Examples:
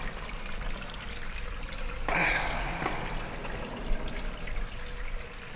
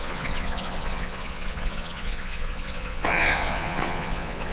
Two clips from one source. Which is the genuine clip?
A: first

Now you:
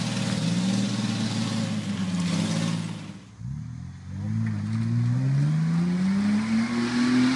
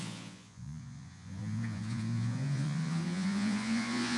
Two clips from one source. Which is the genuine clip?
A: first